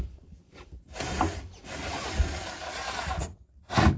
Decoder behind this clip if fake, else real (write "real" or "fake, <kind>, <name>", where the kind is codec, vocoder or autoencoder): real